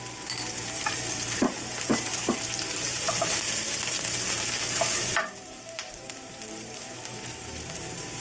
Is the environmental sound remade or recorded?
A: remade